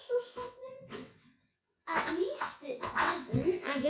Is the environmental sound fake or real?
fake